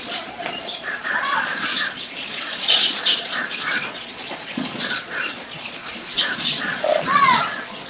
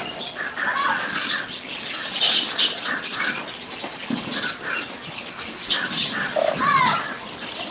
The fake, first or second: first